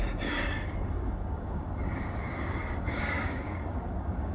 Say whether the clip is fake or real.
fake